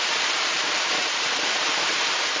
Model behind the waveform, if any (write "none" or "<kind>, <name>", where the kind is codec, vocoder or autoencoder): vocoder, BigVGAN v2